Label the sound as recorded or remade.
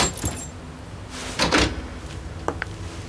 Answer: recorded